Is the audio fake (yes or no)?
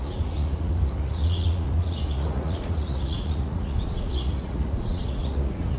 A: yes